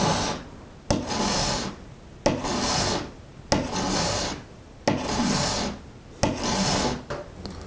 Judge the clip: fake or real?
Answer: real